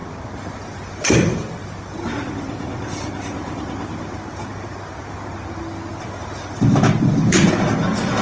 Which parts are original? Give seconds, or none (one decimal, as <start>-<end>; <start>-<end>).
0.0-8.2